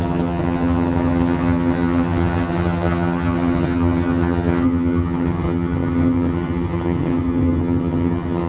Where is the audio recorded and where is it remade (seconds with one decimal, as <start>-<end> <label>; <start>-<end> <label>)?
0.0-8.5 remade